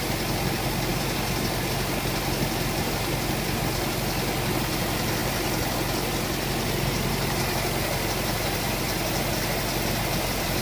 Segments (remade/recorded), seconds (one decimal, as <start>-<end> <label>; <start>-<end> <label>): 0.0-10.6 recorded

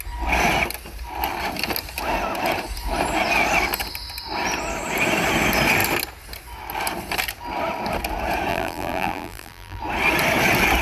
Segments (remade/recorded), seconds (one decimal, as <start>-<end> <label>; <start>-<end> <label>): 0.0-8.5 recorded; 8.5-9.8 remade; 9.8-10.8 recorded

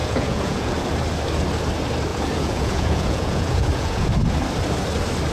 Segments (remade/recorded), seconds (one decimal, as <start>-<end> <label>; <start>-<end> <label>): 0.0-0.7 remade; 0.7-2.1 recorded; 2.1-4.1 remade; 4.1-5.3 recorded

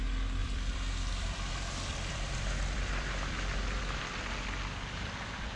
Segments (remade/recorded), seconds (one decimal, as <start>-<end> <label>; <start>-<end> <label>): 0.0-0.4 recorded; 0.4-3.8 remade; 3.8-5.6 recorded

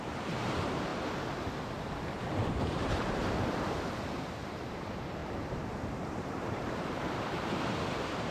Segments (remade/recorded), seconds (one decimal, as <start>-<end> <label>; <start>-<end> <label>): 0.0-0.9 remade; 0.9-2.5 recorded; 2.5-8.3 remade

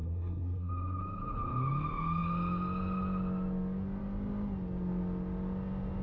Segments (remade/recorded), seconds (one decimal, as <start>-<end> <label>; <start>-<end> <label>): 0.0-0.7 remade; 0.7-6.0 recorded

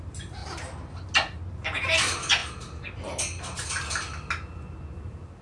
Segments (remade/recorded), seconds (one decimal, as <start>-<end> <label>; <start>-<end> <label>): 0.0-5.4 recorded

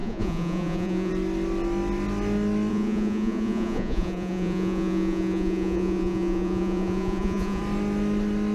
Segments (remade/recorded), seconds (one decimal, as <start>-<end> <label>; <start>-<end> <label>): 0.0-1.1 remade; 1.1-2.7 recorded; 2.7-7.6 remade; 7.6-8.5 recorded